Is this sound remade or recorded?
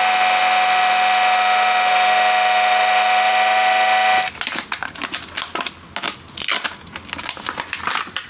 recorded